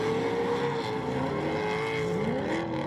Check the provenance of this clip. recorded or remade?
recorded